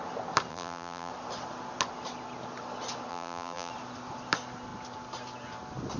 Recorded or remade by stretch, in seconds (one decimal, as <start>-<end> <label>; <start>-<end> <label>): 0.0-0.5 recorded; 0.5-1.1 remade; 1.1-3.1 recorded; 3.1-3.7 remade; 3.7-6.0 recorded